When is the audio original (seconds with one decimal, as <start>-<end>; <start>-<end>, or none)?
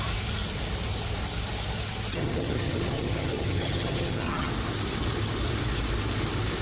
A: 0.0-2.1; 4.5-6.6